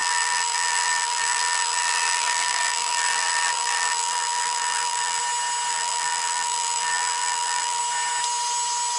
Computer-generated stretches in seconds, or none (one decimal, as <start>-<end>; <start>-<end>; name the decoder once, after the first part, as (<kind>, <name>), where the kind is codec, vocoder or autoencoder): 0.0-5.2 (vocoder, BigVGAN v2); 5.7-7.8